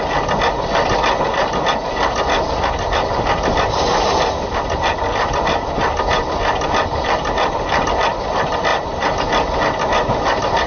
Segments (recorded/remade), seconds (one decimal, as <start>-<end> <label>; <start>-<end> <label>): 0.0-10.7 recorded